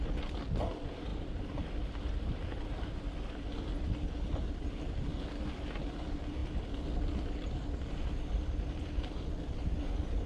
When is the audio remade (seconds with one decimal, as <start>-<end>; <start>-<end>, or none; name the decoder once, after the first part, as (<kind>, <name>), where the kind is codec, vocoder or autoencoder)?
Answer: none